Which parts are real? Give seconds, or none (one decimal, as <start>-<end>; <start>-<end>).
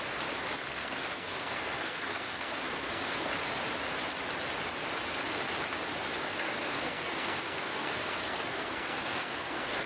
0.0-0.7; 3.3-6.2